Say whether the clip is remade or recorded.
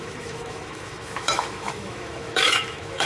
remade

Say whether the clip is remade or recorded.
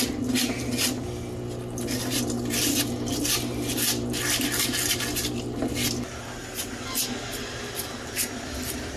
recorded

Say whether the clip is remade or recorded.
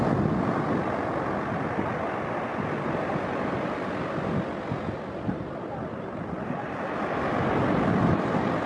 recorded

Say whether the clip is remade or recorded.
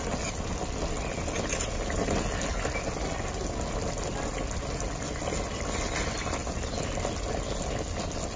recorded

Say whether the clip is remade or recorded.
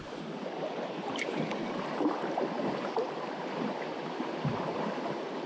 remade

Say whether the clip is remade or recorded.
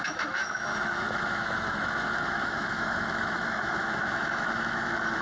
remade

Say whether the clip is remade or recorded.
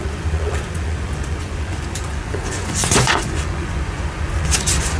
remade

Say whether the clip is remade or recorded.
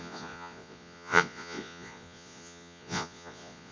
remade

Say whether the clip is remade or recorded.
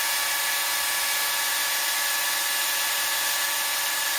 recorded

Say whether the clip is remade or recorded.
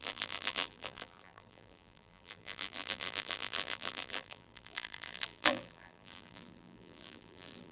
remade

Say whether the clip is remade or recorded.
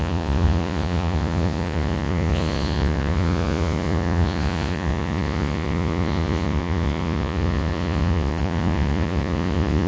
remade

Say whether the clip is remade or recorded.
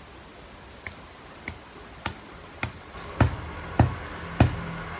recorded